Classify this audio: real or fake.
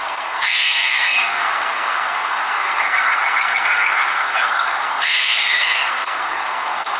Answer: fake